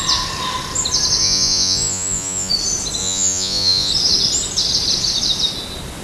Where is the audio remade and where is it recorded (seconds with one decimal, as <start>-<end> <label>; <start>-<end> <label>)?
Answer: 0.0-1.2 recorded; 1.2-2.5 remade; 2.5-3.0 recorded; 3.0-3.9 remade; 3.9-6.0 recorded